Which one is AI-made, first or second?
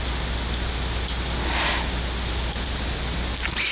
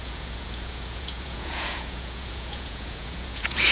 second